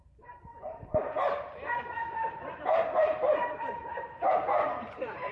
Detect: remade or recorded remade